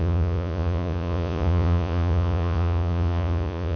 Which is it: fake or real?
fake